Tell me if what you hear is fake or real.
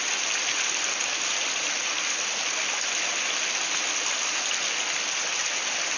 real